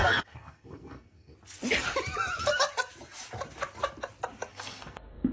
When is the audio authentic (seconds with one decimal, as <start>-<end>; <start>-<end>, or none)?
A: 1.3-4.5